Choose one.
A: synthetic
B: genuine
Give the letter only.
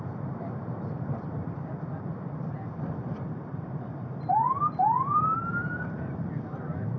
A